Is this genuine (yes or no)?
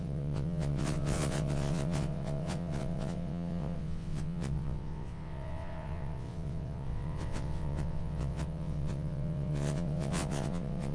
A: no